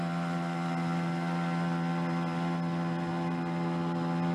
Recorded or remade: recorded